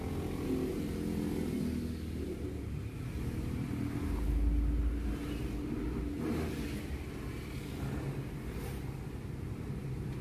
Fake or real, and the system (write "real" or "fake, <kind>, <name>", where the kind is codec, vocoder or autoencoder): real